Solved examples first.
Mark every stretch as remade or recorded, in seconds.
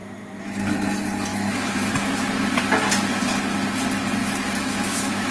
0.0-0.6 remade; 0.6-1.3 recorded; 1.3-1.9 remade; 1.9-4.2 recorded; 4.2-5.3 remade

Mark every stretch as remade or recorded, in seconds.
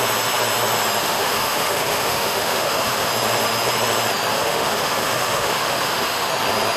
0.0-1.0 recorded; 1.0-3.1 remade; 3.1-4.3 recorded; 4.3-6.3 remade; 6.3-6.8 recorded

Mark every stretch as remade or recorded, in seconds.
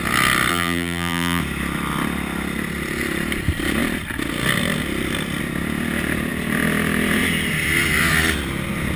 0.0-0.5 recorded; 0.5-1.4 remade; 1.4-9.0 recorded